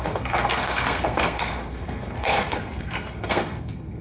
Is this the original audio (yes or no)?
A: no